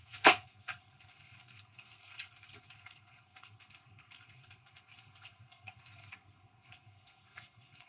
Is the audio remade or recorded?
remade